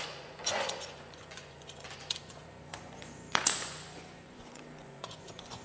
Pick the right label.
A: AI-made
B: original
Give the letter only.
A